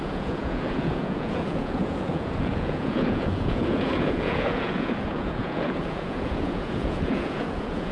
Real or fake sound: fake